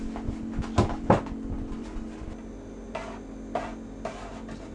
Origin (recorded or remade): recorded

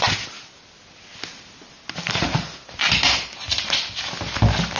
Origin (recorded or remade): recorded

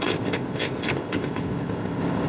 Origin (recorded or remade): remade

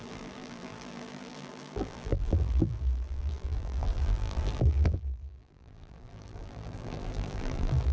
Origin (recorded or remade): remade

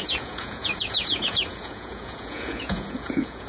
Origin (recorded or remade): remade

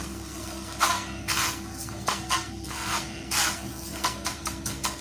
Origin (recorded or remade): remade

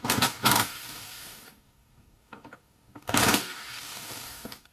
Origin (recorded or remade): remade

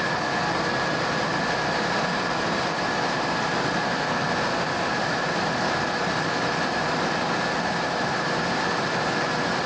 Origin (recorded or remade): recorded